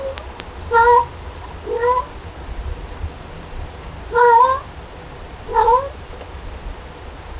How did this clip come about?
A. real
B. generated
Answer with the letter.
A